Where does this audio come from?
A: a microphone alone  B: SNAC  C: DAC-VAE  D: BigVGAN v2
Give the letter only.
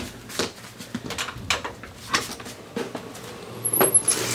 A